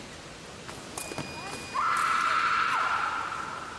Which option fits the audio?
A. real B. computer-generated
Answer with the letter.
A